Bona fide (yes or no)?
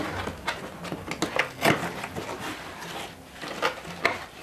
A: yes